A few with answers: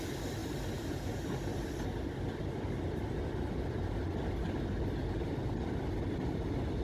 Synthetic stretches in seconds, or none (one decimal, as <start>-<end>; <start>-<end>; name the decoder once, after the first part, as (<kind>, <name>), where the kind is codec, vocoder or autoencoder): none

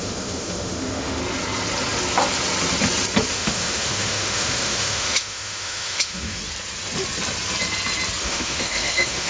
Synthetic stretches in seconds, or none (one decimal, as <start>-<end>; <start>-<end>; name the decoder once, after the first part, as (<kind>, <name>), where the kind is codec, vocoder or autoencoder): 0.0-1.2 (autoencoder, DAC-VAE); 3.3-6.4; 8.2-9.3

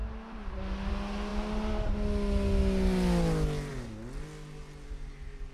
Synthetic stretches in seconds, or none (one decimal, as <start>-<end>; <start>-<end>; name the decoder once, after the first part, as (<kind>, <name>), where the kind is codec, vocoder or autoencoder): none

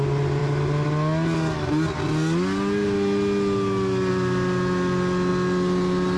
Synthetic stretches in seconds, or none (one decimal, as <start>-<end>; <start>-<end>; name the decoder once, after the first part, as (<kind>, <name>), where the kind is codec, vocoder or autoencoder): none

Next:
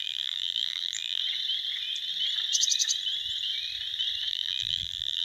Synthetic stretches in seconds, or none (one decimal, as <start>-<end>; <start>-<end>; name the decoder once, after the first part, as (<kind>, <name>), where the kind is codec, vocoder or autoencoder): 0.0-1.2 (vocoder, BigVGAN v2); 4.3-5.2

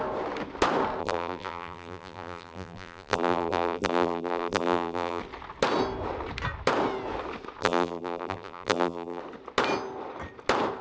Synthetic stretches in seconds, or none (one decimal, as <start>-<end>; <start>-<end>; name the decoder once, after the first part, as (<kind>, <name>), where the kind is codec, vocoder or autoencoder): 1.0-5.2 (vocoder, BigVGAN v2); 7.6-9.2